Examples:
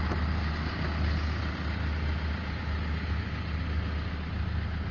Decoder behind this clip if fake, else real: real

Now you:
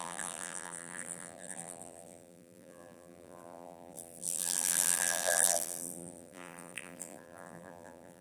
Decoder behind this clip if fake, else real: fake, vocoder, BigVGAN v2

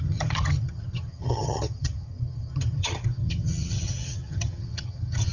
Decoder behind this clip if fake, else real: fake, vocoder, HiFi-GAN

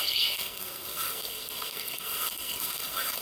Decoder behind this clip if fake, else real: fake, codec, SNAC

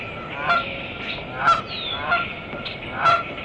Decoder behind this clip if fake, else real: real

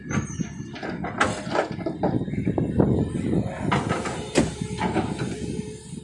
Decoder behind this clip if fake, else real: real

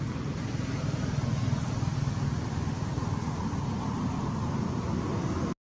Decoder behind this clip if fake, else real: real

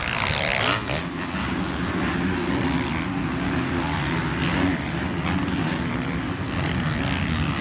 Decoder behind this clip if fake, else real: real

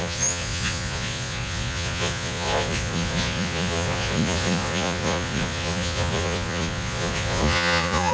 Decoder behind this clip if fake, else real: fake, vocoder, Vocos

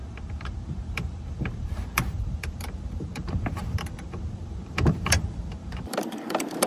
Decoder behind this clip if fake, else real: fake, vocoder, BigVGAN v2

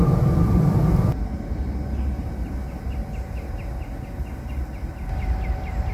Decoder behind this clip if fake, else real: real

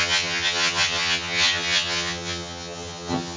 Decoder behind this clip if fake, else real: fake, vocoder, HiFi-GAN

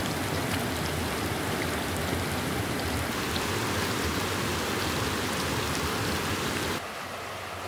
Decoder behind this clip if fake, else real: real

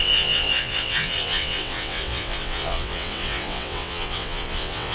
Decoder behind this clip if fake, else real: fake, vocoder, WaveNeXt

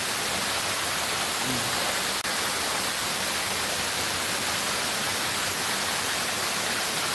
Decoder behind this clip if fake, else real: real